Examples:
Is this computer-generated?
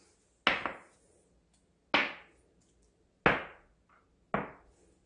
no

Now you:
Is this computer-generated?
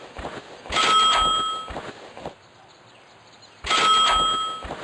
no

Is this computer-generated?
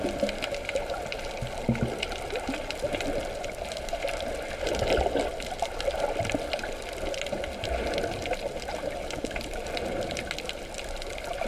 no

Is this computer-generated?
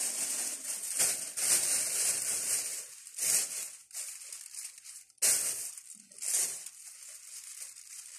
no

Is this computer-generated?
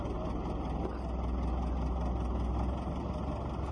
no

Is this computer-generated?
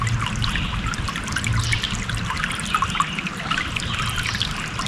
no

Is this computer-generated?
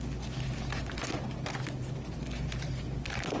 no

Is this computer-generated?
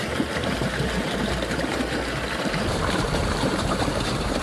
yes